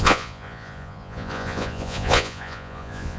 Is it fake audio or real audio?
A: fake